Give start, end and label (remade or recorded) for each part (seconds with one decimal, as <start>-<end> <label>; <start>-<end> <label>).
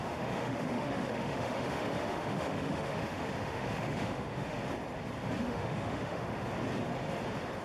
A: 0.0-4.6 remade; 4.6-5.4 recorded; 5.4-6.5 remade; 6.5-7.6 recorded